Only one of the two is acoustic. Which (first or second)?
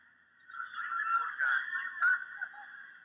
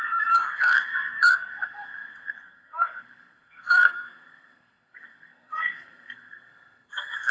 first